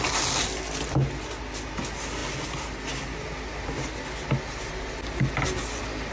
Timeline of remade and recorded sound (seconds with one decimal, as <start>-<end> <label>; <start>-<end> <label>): 0.0-6.1 recorded

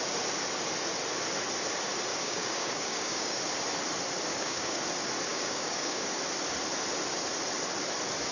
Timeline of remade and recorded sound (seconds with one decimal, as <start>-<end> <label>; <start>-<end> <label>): 0.0-2.1 recorded; 2.1-3.4 remade; 3.4-4.3 recorded; 4.3-4.8 remade; 4.8-5.3 recorded; 5.3-6.2 remade; 6.2-8.3 recorded

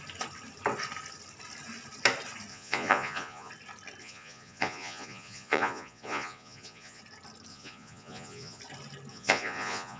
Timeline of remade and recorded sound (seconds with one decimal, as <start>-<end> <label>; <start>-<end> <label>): 0.0-2.5 recorded; 2.5-3.5 remade; 3.5-4.0 recorded; 4.0-7.0 remade; 7.0-7.5 recorded; 7.5-8.6 remade; 8.6-9.1 recorded; 9.1-10.0 remade

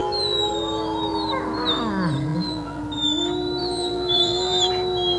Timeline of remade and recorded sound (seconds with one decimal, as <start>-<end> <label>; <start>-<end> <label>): 0.0-0.5 remade; 0.5-2.3 recorded; 2.3-2.8 remade; 2.8-3.6 recorded; 3.6-4.7 remade; 4.7-5.2 recorded

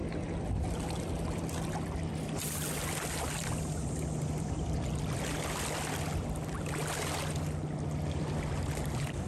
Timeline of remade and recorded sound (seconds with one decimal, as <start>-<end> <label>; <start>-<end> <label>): 0.0-9.3 recorded

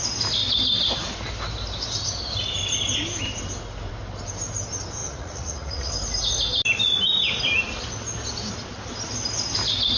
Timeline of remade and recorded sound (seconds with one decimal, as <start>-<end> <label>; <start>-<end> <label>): 0.0-5.0 recorded; 5.0-5.9 remade; 5.9-10.0 recorded

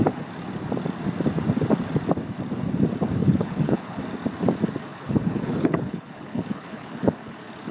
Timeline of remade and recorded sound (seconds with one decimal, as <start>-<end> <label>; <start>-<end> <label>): 0.0-3.2 recorded; 3.2-4.0 remade; 4.0-4.9 recorded; 4.9-7.3 remade; 7.3-7.7 recorded

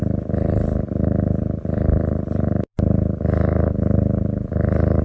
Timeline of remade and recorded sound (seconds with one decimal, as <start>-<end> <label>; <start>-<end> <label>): 0.0-5.0 recorded